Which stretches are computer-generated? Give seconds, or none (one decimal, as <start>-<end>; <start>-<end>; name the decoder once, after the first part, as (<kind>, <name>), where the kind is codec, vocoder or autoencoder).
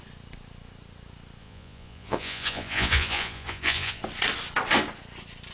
1.4-4.0 (vocoder, Vocos)